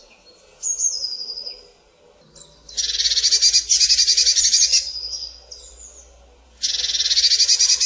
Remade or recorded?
recorded